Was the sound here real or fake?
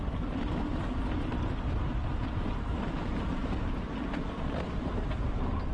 real